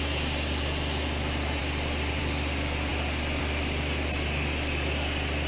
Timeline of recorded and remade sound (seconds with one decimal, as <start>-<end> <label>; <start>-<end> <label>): 0.0-5.5 recorded